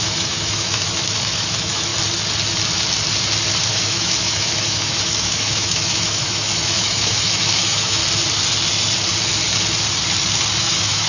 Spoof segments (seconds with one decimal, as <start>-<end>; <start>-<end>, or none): 0.0-1.9; 3.7-8.0; 10.6-11.1